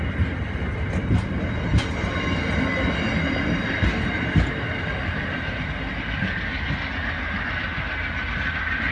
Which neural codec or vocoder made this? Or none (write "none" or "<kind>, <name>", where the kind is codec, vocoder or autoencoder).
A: none